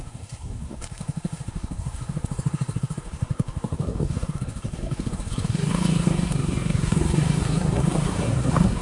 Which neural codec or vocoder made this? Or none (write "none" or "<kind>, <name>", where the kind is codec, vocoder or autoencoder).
codec, SNAC